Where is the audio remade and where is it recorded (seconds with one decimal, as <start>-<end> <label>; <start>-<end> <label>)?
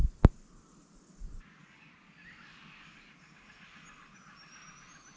0.0-5.2 recorded